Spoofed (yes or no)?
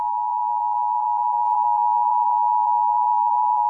yes